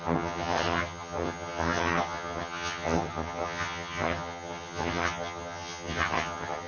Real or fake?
fake